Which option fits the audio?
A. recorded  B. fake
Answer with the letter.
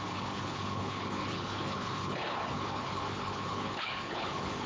B